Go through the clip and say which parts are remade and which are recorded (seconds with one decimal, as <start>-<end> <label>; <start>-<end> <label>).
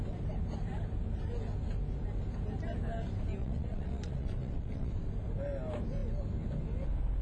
0.0-3.4 recorded; 3.4-4.9 remade; 4.9-7.2 recorded